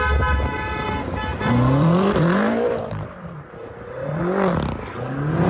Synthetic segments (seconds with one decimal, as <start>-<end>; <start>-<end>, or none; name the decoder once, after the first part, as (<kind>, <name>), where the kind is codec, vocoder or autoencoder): 1.3-4.2 (vocoder, BigVGAN v2)